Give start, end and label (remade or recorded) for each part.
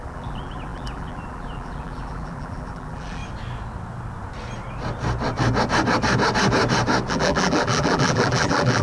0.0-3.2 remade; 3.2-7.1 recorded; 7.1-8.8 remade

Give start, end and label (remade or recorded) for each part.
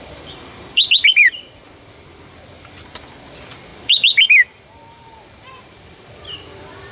0.0-6.9 remade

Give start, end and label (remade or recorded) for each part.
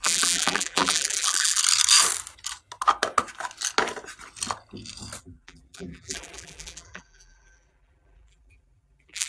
0.0-1.6 remade; 1.6-5.2 recorded; 5.2-9.3 remade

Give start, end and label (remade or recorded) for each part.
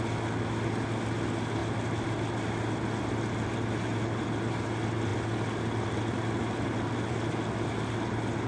0.0-1.6 recorded; 1.6-3.0 remade; 3.0-5.1 recorded; 5.1-7.1 remade; 7.1-8.5 recorded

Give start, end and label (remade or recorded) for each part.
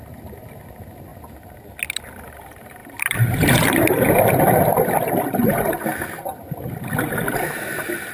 0.0-8.1 recorded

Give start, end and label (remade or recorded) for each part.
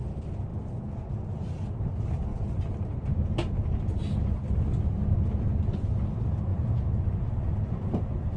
0.0-0.5 remade; 0.5-1.1 recorded; 1.1-2.3 remade; 2.3-5.6 recorded; 5.6-6.5 remade; 6.5-7.0 recorded; 7.0-8.4 remade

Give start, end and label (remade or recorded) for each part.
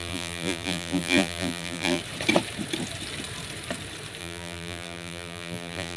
0.0-2.0 remade; 2.0-4.2 recorded; 4.2-6.0 remade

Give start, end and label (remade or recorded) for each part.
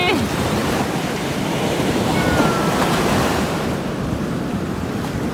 0.0-0.6 recorded; 0.6-3.8 remade; 3.8-5.3 recorded